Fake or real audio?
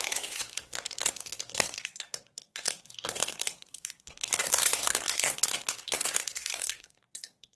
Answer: fake